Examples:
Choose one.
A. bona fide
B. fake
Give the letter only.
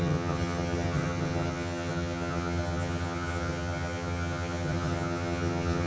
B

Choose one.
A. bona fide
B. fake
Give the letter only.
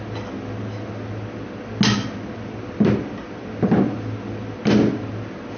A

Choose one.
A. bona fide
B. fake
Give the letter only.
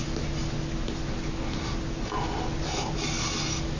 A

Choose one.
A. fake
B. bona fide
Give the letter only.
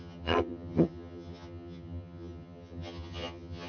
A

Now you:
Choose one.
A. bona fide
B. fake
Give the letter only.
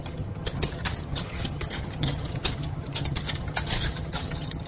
B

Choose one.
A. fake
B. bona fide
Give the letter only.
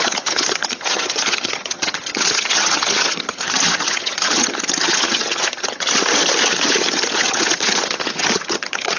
A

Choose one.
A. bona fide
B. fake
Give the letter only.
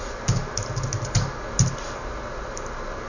A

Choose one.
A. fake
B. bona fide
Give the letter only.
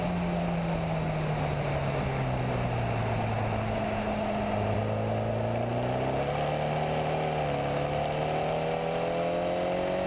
B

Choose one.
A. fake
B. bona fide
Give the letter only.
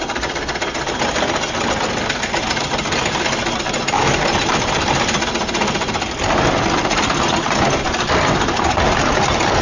B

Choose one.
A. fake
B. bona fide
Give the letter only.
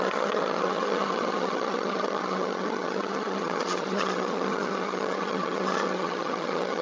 A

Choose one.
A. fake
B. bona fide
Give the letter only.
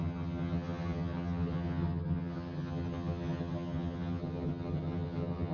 A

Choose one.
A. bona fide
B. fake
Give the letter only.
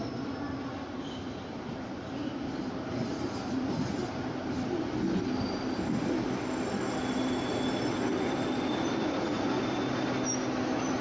A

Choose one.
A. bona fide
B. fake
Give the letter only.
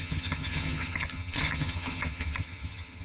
B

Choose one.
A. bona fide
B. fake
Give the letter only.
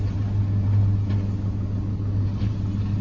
A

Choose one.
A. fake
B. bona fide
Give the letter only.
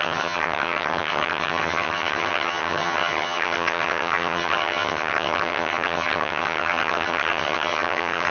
A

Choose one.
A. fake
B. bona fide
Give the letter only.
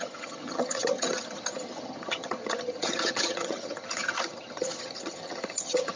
A